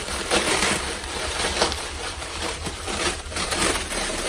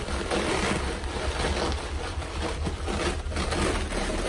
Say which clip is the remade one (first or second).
first